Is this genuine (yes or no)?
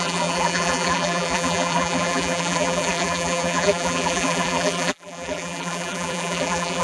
no